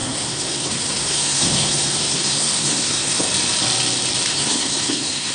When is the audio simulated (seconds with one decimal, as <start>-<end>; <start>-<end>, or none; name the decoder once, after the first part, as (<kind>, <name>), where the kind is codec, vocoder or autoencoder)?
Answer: 0.0-3.2 (codec, SNAC); 4.3-5.3